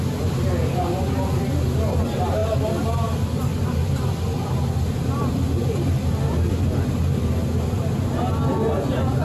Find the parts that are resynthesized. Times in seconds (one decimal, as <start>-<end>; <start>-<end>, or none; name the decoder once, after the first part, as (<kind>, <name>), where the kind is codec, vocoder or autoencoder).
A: none